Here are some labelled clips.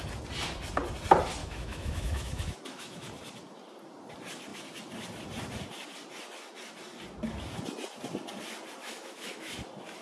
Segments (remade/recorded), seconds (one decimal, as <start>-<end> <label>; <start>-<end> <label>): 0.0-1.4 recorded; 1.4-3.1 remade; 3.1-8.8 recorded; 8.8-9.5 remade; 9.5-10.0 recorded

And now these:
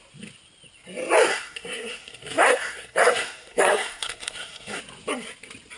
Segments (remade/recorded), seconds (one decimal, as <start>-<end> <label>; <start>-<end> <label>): 0.0-1.3 recorded; 1.3-4.8 remade; 4.8-5.8 recorded

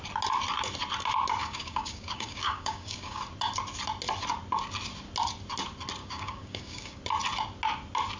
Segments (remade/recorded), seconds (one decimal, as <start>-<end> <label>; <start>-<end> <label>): 0.0-1.4 recorded; 1.4-3.2 remade; 3.2-6.0 recorded; 6.0-7.0 remade; 7.0-8.2 recorded

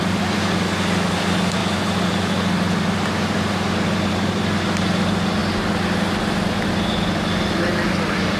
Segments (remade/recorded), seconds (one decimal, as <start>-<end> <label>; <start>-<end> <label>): 0.0-8.4 recorded

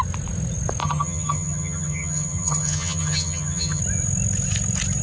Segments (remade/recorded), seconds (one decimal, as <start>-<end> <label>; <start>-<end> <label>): 0.0-0.8 recorded; 0.8-3.8 remade; 3.8-5.0 recorded

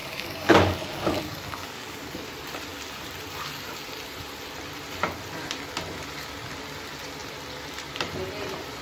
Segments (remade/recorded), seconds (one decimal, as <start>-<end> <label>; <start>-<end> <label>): 0.0-2.3 remade; 2.3-8.8 recorded

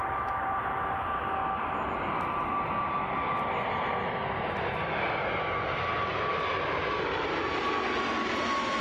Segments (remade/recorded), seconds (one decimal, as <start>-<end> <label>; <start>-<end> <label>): 0.0-8.8 recorded